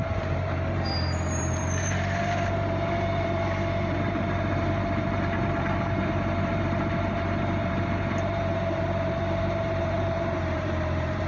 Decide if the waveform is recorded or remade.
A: remade